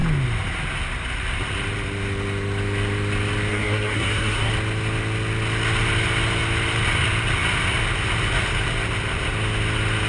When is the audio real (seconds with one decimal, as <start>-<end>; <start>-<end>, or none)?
0.0-3.5; 4.5-10.1